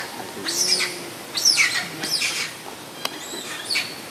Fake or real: real